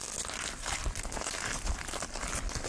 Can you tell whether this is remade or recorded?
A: recorded